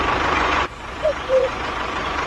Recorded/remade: remade